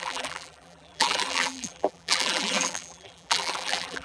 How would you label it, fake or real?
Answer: fake